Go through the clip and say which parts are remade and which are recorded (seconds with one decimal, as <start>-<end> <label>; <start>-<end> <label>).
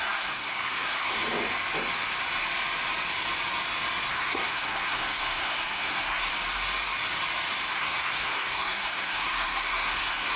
0.0-1.2 remade; 1.2-4.1 recorded; 4.1-6.3 remade; 6.3-7.7 recorded; 7.7-10.4 remade